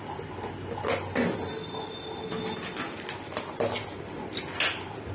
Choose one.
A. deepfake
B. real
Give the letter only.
B